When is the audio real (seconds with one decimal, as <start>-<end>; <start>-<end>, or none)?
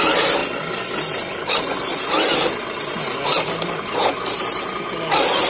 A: 0.0-5.5